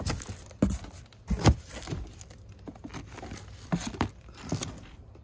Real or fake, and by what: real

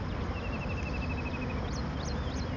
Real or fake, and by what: real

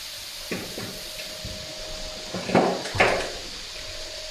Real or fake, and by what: real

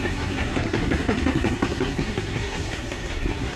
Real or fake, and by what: fake, codec, SNAC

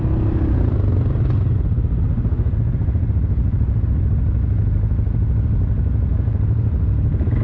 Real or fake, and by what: real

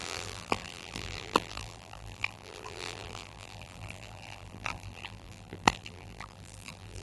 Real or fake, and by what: fake, vocoder, BigVGAN v2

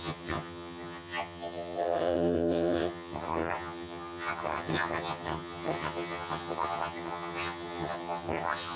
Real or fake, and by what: fake, vocoder, HiFi-GAN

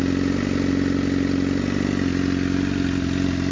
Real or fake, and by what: real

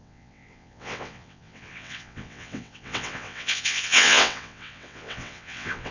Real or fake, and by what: fake, vocoder, WaveNeXt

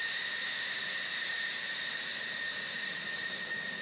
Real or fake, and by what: real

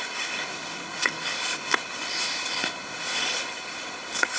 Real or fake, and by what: fake, codec, HILCodec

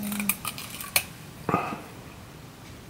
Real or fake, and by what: real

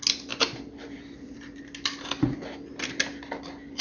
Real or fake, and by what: real